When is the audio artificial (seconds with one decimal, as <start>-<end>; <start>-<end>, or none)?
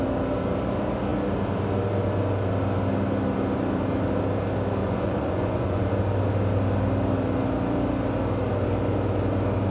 4.8-5.9